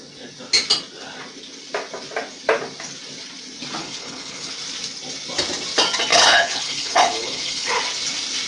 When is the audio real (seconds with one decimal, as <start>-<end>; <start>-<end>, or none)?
0.0-3.8; 4.5-6.1; 7.8-8.5